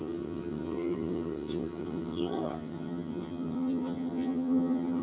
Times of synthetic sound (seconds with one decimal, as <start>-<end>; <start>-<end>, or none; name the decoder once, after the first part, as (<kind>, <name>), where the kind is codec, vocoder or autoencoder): 0.0-5.0 (vocoder, HiFi-GAN)